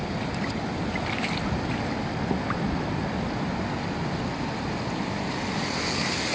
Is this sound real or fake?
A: real